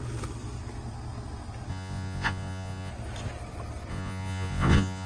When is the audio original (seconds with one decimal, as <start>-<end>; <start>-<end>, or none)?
0.0-1.7; 2.9-3.9